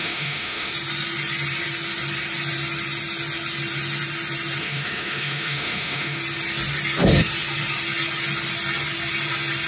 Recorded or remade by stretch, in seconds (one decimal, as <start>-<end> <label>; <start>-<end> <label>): 0.0-0.7 remade; 0.7-4.6 recorded; 4.6-6.2 remade; 6.2-9.7 recorded